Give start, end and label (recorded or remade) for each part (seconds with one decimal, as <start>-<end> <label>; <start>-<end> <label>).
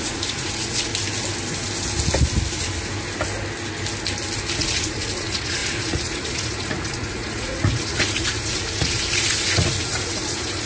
0.0-0.9 remade; 0.9-4.6 recorded; 4.6-10.7 remade